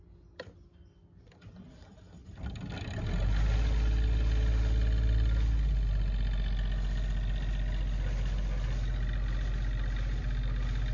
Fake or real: real